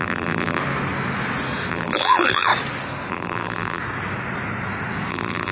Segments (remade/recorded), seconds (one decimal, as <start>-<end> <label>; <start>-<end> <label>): 0.0-0.6 remade; 0.6-1.7 recorded; 1.7-2.5 remade; 2.5-3.1 recorded; 3.1-3.8 remade; 3.8-5.1 recorded; 5.1-5.5 remade